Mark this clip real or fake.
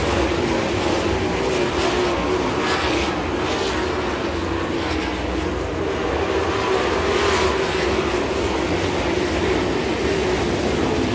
real